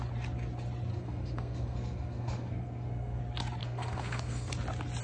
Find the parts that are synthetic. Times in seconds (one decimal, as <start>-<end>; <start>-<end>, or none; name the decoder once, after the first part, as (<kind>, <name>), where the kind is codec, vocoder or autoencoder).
0.9-3.2 (codec, SNAC); 3.6-4.5